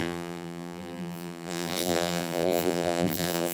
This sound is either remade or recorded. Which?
remade